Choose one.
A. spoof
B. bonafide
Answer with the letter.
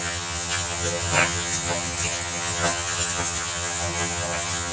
A